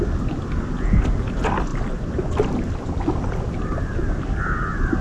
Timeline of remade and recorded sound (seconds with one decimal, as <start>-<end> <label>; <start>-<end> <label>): 0.0-5.0 recorded